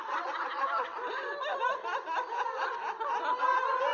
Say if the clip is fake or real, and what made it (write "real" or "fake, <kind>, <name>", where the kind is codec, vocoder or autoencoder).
real